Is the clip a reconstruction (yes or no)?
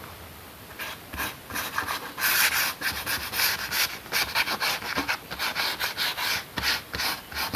no